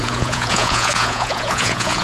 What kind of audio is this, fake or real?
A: fake